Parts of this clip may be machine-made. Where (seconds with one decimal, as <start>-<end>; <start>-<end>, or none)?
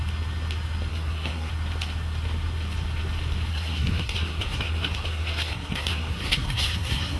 0.9-1.5; 3.5-7.2